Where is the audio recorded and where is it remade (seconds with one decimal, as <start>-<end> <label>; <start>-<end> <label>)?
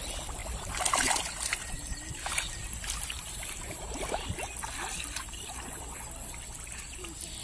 0.0-7.4 recorded